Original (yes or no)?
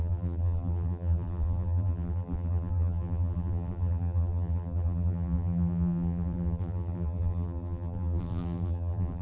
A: no